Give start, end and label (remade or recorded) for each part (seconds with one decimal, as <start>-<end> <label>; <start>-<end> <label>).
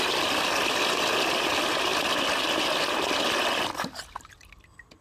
0.0-5.0 recorded